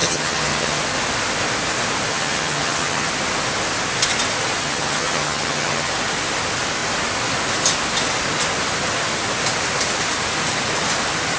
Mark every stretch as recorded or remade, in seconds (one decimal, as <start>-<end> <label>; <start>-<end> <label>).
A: 0.0-0.8 remade; 0.8-2.1 recorded; 2.1-3.1 remade; 3.1-4.6 recorded; 4.6-5.9 remade; 5.9-11.4 recorded